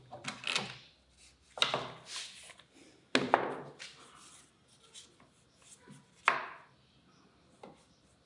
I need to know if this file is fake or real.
real